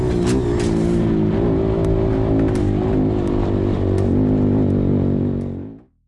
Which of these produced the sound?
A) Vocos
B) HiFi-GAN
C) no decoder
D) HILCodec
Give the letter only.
C